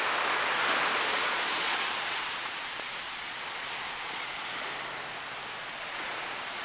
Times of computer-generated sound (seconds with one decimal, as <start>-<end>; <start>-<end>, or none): 1.1-4.5; 5.6-6.6